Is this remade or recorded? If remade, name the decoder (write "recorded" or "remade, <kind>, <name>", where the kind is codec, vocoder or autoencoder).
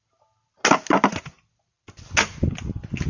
recorded